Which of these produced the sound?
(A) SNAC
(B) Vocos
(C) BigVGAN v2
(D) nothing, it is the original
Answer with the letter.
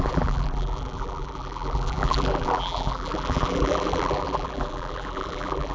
C